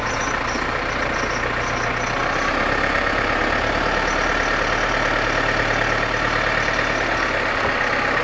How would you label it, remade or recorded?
recorded